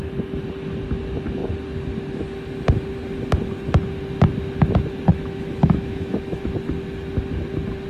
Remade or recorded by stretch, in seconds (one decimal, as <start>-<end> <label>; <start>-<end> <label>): 0.0-5.1 recorded; 5.1-6.4 remade; 6.4-7.9 recorded